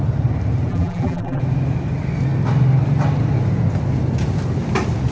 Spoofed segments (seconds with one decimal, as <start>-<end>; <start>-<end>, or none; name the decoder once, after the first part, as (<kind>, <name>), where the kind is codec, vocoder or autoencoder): 0.7-1.4 (vocoder, BigVGAN v2)